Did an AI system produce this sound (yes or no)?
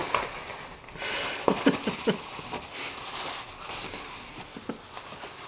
no